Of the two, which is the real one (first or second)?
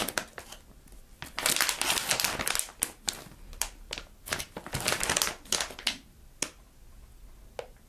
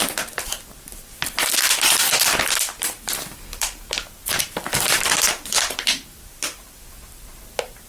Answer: first